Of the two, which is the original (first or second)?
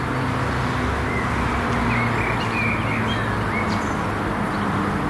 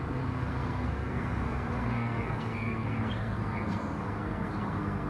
first